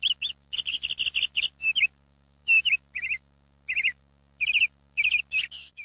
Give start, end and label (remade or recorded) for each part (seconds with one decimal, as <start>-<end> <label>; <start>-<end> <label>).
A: 0.0-5.8 remade

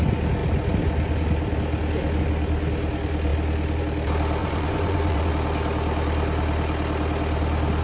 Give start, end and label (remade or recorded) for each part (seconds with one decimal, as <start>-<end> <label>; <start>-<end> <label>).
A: 0.0-4.4 recorded; 4.4-5.3 remade; 5.3-7.8 recorded

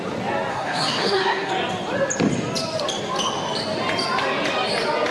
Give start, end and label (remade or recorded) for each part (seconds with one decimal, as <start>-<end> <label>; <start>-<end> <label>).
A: 0.0-0.5 recorded; 0.5-1.5 remade; 1.5-5.1 recorded

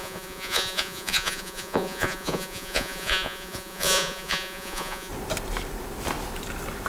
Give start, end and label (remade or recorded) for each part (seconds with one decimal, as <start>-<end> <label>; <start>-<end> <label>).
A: 0.0-5.1 remade; 5.1-6.9 recorded

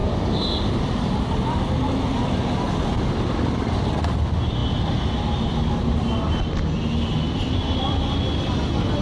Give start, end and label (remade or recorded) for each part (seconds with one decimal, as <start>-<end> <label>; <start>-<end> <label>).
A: 0.0-9.0 recorded

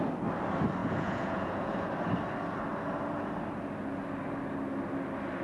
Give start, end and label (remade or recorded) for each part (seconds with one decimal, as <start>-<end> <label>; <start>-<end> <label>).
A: 0.0-0.8 recorded; 0.8-1.8 remade; 1.8-5.4 recorded

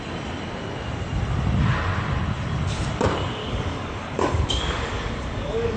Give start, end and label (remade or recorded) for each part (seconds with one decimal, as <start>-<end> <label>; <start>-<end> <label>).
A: 0.0-3.4 recorded; 3.4-5.8 remade

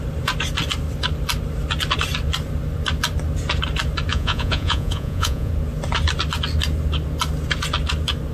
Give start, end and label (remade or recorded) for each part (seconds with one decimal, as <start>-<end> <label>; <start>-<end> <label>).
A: 0.0-4.1 recorded; 4.1-5.5 remade; 5.5-8.3 recorded